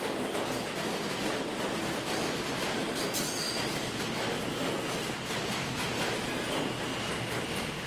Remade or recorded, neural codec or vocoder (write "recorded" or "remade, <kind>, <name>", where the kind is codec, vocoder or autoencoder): recorded